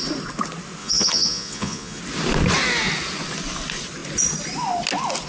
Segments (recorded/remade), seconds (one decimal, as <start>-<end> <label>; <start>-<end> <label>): 0.0-0.8 recorded; 0.8-2.0 remade; 2.0-5.3 recorded